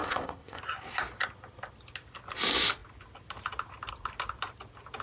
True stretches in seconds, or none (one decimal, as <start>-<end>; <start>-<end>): 0.6-5.0

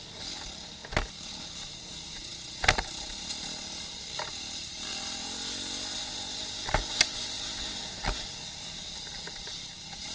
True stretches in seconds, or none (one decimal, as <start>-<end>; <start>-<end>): 0.0-10.1